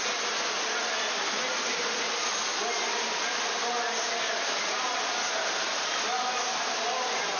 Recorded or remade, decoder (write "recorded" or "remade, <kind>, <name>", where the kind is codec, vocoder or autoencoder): recorded